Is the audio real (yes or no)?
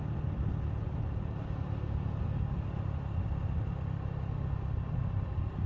yes